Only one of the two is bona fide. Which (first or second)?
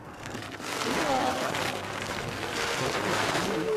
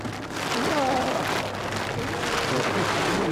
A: second